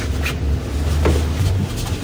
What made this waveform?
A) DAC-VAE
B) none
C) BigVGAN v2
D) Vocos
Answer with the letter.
B